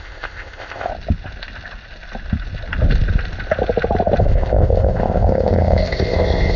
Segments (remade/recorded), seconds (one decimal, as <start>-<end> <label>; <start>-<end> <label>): 0.0-0.9 remade; 0.9-4.2 recorded; 4.2-6.6 remade